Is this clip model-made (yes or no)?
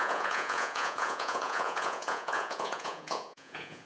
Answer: yes